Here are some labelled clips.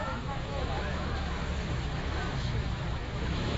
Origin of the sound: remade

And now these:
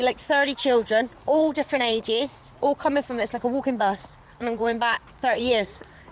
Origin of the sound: remade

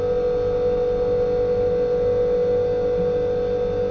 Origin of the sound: recorded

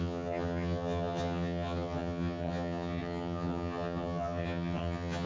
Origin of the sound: remade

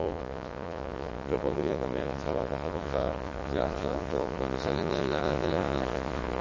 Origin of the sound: remade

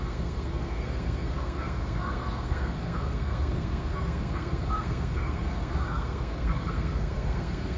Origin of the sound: remade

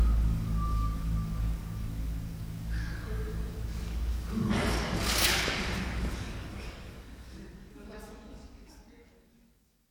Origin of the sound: remade